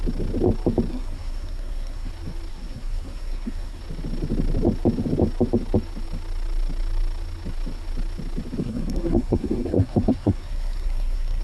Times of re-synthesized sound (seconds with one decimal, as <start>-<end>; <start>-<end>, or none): 0.9-2.1; 2.5-3.8; 8.6-11.4